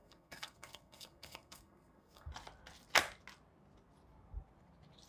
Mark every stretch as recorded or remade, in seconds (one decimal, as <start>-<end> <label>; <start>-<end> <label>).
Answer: 0.0-2.3 remade; 2.3-5.1 recorded